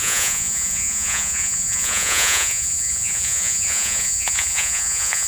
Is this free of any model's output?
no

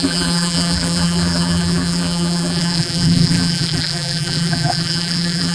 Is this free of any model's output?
no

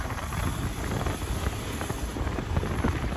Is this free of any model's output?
yes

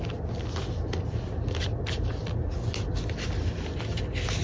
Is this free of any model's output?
yes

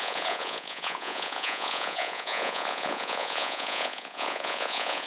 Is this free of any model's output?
no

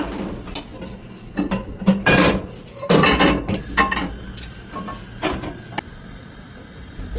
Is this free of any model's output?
yes